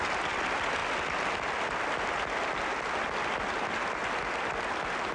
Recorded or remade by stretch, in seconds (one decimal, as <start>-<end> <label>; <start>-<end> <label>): 0.0-5.1 recorded